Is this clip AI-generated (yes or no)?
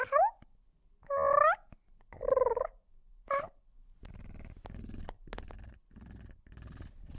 no